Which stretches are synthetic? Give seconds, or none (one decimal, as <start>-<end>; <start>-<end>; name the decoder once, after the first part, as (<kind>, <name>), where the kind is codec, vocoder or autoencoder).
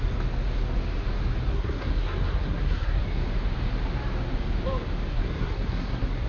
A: 1.5-3.2 (codec, SNAC); 5.1-6.3